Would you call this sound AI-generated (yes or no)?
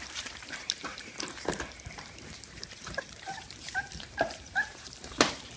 yes